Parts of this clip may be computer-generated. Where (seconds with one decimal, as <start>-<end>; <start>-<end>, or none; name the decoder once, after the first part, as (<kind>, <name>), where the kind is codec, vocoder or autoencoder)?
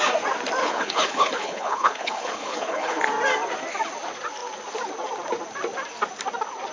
0.6-3.0 (codec, HILCodec)